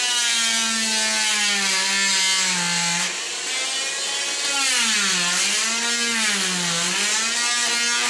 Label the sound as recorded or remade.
recorded